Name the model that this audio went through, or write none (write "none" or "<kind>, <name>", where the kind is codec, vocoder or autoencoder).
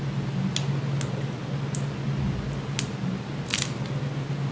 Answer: none